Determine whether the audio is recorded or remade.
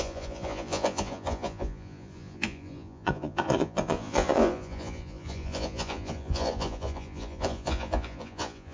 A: remade